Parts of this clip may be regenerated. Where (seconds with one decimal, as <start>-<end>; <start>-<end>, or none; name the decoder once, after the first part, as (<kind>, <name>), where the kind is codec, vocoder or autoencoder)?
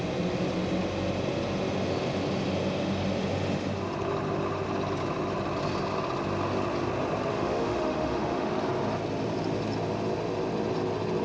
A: 7.3-8.5 (autoencoder, DAC-VAE)